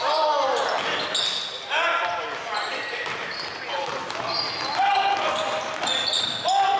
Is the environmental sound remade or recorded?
recorded